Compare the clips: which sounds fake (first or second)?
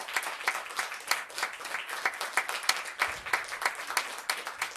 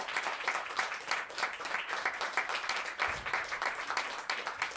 second